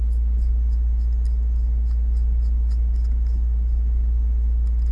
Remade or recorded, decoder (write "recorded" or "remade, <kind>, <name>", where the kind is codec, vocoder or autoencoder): recorded